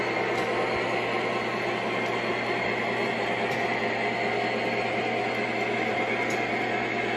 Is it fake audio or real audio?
real